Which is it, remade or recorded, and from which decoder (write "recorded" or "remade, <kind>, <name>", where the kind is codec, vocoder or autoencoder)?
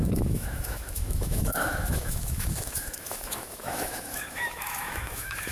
remade, autoencoder, DAC-VAE